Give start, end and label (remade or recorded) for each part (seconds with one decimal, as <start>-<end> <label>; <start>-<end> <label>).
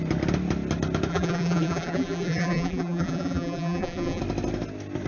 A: 0.0-1.1 recorded; 1.1-4.2 remade; 4.2-5.1 recorded